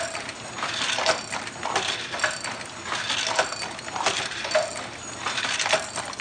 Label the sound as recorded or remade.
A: recorded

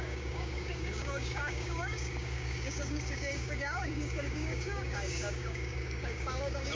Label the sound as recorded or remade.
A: remade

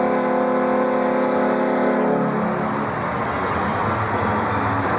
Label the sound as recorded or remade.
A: recorded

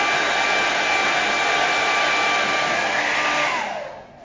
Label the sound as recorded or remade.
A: recorded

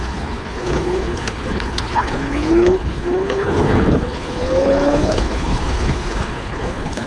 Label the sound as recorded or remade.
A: remade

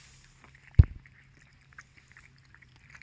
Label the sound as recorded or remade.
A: recorded